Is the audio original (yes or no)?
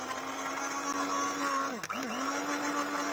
yes